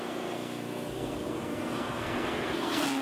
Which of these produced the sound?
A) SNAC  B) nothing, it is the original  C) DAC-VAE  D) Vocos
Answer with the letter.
A